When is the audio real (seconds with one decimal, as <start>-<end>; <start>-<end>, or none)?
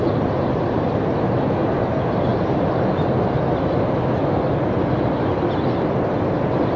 0.0-6.8